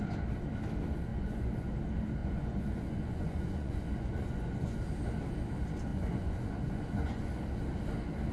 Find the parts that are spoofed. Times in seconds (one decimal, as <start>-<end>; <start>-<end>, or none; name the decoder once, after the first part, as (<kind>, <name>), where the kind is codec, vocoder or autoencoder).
1.1-1.7 (vocoder, Vocos); 2.2-4.8; 5.9-7.3